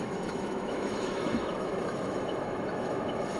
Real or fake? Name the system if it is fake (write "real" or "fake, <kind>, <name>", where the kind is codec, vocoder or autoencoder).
fake, autoencoder, DAC-VAE